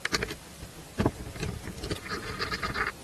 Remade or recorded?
remade